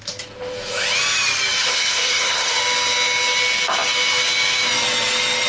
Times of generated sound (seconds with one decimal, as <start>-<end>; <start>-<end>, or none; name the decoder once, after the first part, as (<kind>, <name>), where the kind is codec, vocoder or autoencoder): 1.6-2.6 (codec, HILCodec)